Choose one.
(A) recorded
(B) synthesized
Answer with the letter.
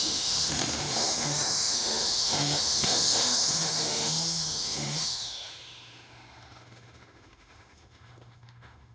B